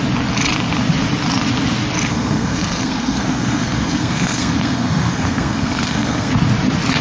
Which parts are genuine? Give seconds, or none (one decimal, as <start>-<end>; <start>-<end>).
0.0-2.1; 6.3-7.0